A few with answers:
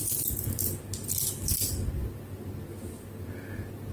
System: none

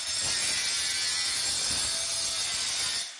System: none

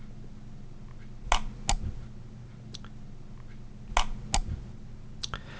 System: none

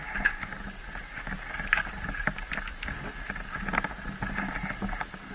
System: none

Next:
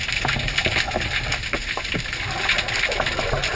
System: none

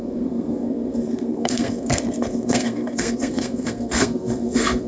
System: codec, SNAC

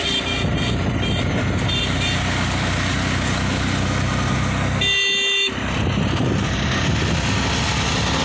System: none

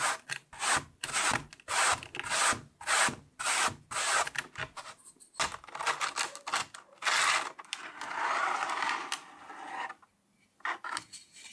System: none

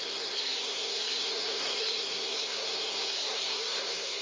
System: codec, SNAC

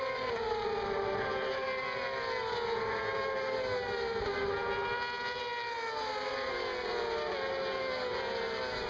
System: none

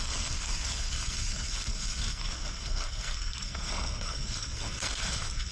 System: codec, SNAC